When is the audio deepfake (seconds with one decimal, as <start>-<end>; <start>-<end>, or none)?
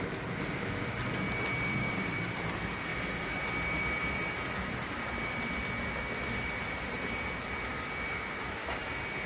1.8-2.4